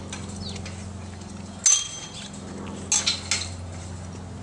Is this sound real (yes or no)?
yes